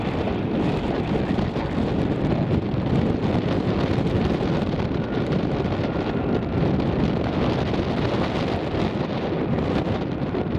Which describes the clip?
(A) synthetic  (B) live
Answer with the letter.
B